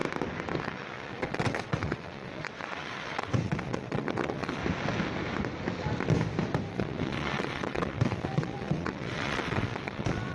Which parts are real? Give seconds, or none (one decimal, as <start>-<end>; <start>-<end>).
0.0-0.6; 4.6-6.7